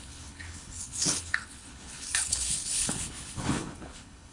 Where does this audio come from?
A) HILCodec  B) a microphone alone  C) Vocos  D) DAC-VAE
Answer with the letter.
A